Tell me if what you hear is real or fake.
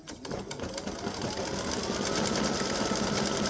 real